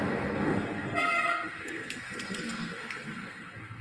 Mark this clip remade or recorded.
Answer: remade